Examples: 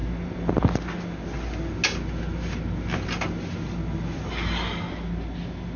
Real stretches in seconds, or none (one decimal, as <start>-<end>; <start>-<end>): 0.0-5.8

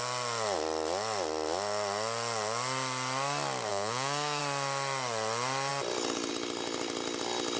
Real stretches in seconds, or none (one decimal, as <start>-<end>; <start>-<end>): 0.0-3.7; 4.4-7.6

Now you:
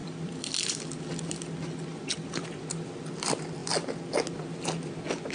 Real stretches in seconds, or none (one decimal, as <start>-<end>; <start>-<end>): 1.2-1.9; 3.0-5.3

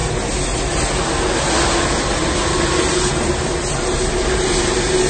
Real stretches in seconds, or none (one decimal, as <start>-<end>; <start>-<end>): 0.0-5.1